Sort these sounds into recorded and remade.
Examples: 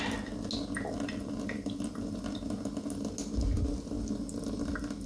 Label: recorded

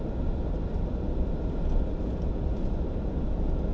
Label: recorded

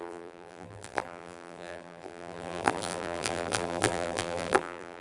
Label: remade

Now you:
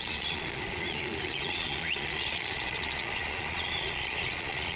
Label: remade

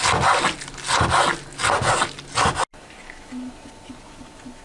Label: recorded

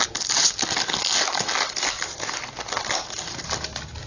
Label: recorded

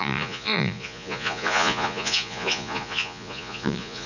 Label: remade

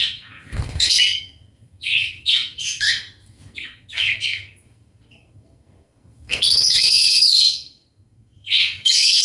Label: remade